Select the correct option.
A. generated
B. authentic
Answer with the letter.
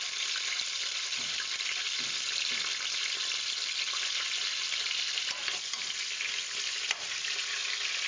B